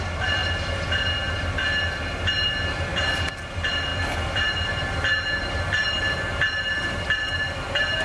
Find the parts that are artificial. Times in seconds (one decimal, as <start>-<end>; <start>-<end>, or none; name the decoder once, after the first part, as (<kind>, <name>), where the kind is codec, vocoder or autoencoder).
none